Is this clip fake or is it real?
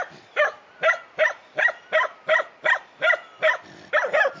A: real